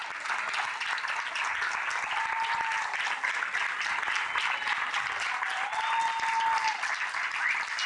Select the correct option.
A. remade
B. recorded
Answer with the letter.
B